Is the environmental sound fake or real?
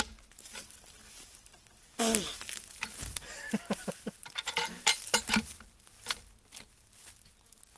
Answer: real